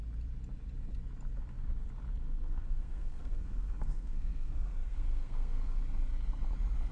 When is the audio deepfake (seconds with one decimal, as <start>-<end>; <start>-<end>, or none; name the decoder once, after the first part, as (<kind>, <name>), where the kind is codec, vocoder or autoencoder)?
2.2-5.8 (codec, SNAC)